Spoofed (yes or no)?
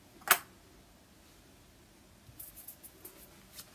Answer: no